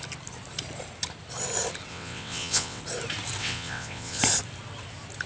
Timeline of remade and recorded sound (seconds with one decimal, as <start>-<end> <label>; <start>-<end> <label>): 0.0-1.9 recorded; 1.9-2.8 remade; 2.8-3.4 recorded; 3.4-4.2 remade; 4.2-5.3 recorded

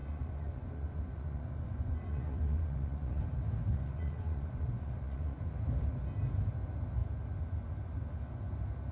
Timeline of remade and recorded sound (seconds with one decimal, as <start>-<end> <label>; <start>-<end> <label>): 0.0-3.2 remade; 3.2-3.7 recorded; 3.7-5.4 remade; 5.4-8.9 recorded